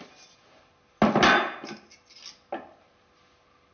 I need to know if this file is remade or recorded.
recorded